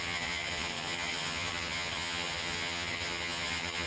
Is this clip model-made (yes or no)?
yes